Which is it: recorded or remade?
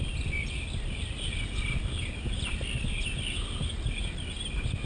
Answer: recorded